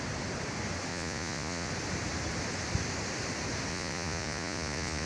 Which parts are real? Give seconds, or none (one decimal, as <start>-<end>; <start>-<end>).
0.0-0.9; 1.7-3.7